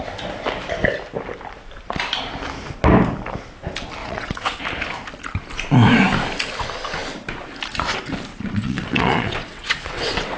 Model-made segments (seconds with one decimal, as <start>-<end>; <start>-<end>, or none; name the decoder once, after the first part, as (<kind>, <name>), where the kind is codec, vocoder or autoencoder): 4.0-4.6 (vocoder, WaveNeXt); 8.3-10.4